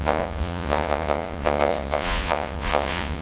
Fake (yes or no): yes